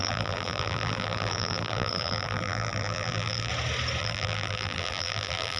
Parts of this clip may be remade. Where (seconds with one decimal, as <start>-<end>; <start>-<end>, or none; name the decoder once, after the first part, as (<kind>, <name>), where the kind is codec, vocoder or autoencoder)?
0.0-3.5 (vocoder, BigVGAN v2); 4.0-5.6